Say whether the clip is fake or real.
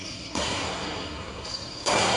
fake